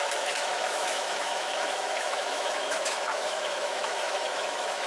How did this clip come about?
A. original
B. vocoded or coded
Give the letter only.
B